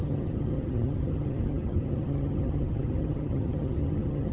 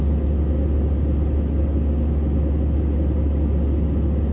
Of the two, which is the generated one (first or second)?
first